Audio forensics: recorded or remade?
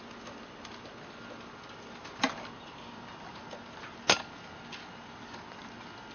recorded